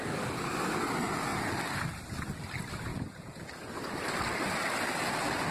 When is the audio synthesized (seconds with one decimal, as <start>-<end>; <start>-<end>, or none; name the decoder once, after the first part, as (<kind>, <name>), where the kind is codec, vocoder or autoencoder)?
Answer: 2.9-3.7 (vocoder, Vocos)